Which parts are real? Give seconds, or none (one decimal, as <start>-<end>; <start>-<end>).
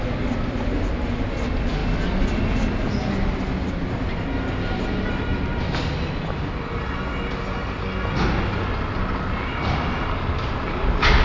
0.0-11.2